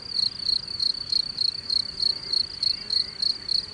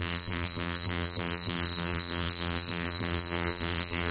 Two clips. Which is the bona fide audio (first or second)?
first